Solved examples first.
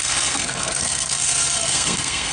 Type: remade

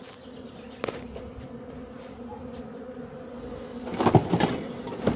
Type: recorded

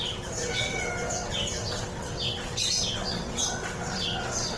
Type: remade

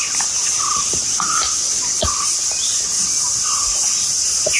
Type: recorded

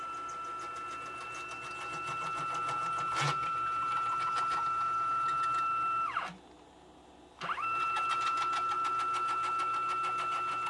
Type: recorded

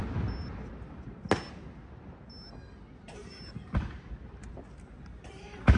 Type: recorded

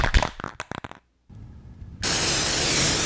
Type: recorded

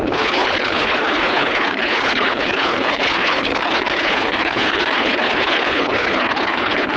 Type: remade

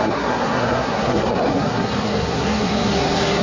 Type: remade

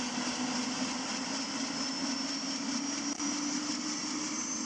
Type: recorded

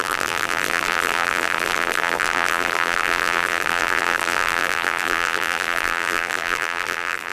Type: remade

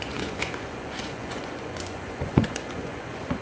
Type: remade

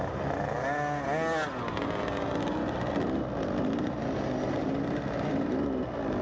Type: recorded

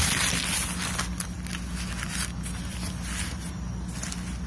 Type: recorded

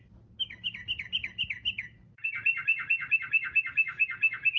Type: recorded